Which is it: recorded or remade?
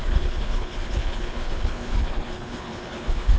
remade